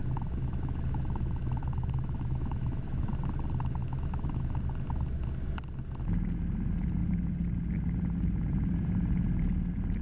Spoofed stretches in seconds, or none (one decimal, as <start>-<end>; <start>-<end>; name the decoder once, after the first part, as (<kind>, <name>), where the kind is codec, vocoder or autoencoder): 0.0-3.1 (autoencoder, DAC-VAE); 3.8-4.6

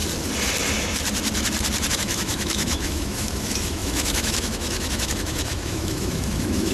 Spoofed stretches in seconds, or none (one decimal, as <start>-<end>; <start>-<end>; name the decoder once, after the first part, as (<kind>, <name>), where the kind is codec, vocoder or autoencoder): 1.9-6.7 (autoencoder, DAC-VAE)

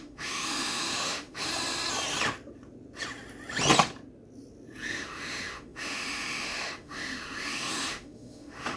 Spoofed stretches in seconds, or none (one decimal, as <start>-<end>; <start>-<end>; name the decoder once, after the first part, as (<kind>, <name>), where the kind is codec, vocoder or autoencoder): 0.0-1.5 (autoencoder, DAC-VAE); 4.9-8.8

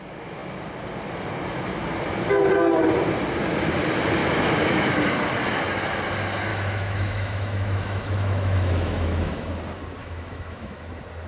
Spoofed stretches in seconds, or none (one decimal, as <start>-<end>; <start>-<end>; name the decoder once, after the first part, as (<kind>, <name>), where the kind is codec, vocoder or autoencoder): 4.2-4.9 (autoencoder, DAC-VAE); 6.5-9.5; 10.0-10.8

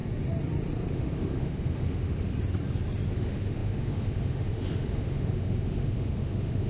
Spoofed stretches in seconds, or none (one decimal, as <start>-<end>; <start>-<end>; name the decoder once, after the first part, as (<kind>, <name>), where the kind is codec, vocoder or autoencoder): 0.9-2.3 (autoencoder, DAC-VAE); 3.1-6.7

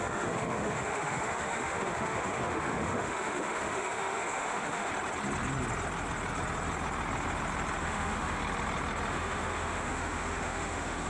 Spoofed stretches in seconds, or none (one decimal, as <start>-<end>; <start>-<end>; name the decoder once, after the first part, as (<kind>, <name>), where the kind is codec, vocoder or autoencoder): 0.0-4.9 (autoencoder, DAC-VAE); 7.8-8.4; 9.1-11.1

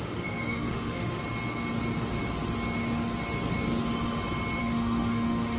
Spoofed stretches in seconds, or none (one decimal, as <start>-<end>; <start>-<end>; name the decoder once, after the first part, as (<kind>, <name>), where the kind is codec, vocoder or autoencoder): 0.0-1.2 (autoencoder, DAC-VAE); 4.6-5.6

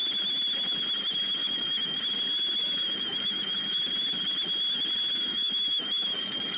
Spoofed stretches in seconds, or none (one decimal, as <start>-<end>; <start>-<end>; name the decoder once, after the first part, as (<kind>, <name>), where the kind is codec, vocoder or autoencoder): 1.4-2.0 (autoencoder, DAC-VAE); 2.6-3.9; 5.3-6.6